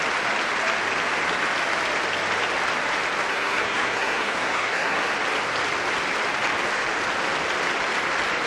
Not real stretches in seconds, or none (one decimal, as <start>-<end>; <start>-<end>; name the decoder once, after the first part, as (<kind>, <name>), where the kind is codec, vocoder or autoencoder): 3.3-5.1 (codec, SNAC)